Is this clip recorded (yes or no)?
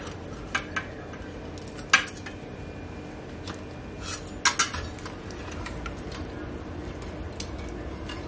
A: yes